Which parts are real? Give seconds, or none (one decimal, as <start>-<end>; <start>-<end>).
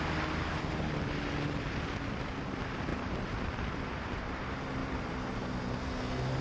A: 0.0-2.9; 3.6-4.8; 5.5-6.4